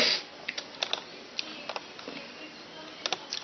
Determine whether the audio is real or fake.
real